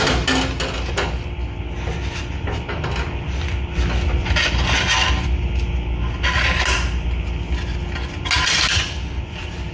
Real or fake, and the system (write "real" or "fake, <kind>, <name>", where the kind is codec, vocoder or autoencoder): real